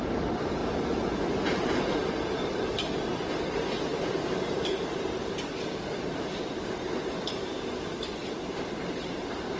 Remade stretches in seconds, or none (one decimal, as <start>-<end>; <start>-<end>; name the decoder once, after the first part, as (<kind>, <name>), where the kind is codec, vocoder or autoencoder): 3.9-7.0 (vocoder, BigVGAN v2)